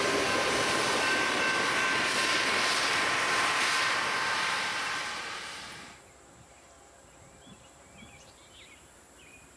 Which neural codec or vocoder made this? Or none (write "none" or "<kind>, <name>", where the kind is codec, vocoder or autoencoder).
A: vocoder, BigVGAN v2